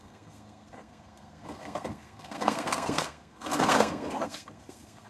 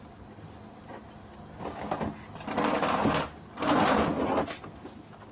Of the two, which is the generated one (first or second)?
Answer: first